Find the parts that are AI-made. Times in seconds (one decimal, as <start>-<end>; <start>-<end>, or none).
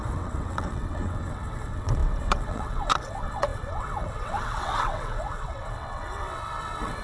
0.0-7.0